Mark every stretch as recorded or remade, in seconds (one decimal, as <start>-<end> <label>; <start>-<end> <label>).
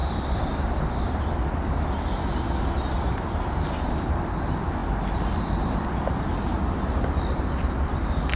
0.0-8.4 recorded